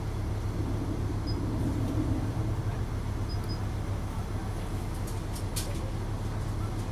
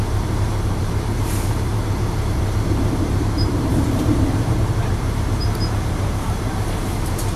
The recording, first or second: first